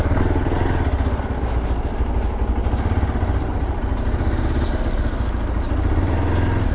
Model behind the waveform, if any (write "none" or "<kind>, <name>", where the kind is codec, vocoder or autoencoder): none